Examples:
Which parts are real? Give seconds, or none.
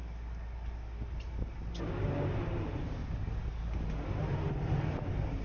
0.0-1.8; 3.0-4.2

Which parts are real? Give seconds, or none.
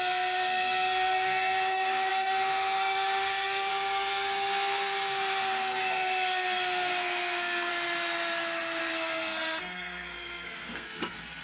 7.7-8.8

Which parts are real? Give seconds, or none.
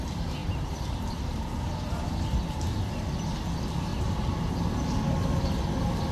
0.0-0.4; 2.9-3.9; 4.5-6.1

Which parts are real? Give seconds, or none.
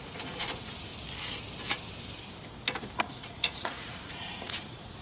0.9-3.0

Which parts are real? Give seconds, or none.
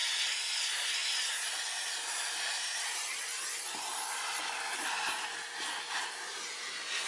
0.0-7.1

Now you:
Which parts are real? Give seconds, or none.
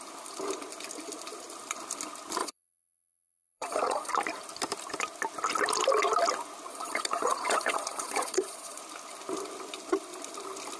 0.0-2.4; 4.1-6.7; 8.8-10.8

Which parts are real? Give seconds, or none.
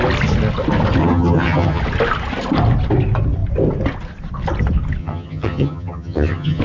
0.0-1.0; 1.8-5.0